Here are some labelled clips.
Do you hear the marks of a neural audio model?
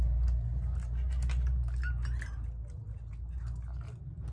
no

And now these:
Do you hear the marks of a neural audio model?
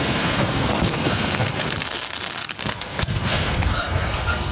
yes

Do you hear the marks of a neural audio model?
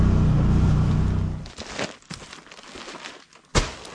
no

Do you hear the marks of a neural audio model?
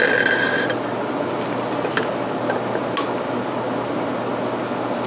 no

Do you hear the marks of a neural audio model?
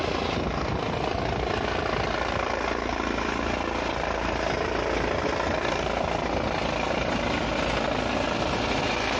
no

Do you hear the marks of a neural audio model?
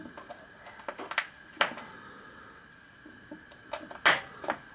no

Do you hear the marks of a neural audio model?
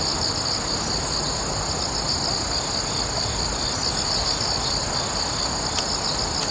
no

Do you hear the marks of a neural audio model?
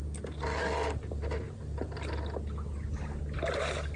no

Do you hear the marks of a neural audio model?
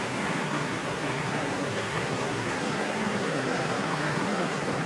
yes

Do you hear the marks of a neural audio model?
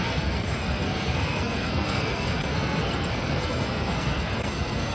yes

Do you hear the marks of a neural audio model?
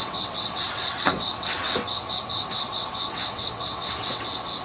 yes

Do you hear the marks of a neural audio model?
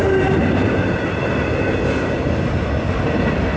no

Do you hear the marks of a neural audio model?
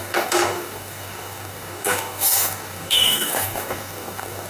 yes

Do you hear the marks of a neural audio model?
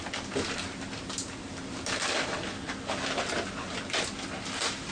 no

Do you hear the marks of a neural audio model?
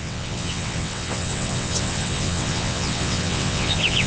yes